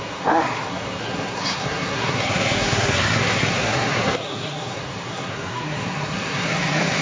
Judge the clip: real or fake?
fake